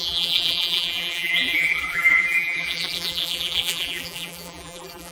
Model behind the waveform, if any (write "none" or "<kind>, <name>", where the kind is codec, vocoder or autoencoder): vocoder, BigVGAN v2